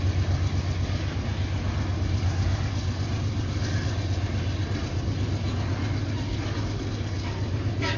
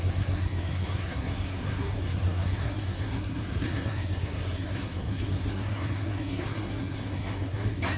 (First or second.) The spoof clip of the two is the second